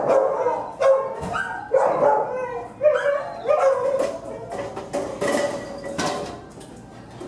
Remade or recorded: recorded